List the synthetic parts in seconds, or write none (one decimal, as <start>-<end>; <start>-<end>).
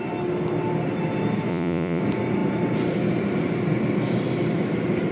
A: 1.5-2.0